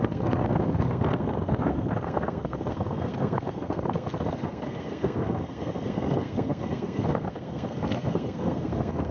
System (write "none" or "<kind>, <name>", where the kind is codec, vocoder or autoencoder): codec, SNAC